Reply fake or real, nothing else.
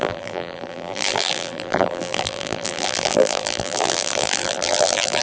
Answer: fake